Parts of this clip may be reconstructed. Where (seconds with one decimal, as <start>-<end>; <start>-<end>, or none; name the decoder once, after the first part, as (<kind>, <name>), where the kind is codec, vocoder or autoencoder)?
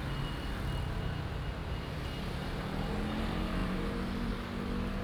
3.6-4.3 (vocoder, BigVGAN v2)